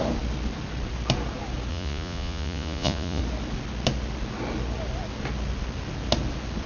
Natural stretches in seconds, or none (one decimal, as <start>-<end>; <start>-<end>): 0.0-1.7; 3.2-6.7